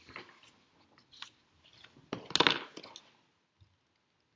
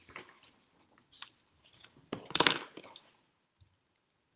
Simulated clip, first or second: second